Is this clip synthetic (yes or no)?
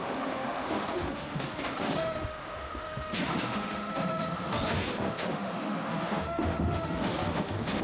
yes